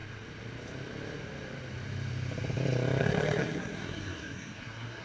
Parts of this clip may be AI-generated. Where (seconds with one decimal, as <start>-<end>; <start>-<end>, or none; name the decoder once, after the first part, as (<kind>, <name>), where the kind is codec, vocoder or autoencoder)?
3.0-5.0 (codec, SNAC)